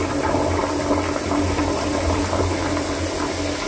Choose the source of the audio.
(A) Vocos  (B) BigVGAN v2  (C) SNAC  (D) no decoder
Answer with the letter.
D